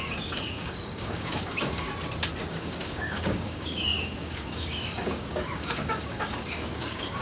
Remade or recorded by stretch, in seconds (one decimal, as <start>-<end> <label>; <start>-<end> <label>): 0.0-1.9 remade; 1.9-2.5 recorded; 2.5-7.2 remade